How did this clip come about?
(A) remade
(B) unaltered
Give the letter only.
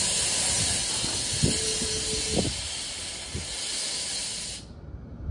B